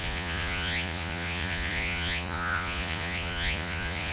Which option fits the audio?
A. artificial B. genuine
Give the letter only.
A